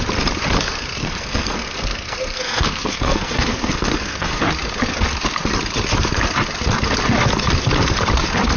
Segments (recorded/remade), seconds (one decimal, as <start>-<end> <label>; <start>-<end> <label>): 0.0-1.0 recorded; 1.0-4.4 remade; 4.4-8.6 recorded